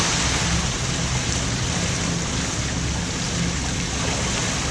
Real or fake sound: real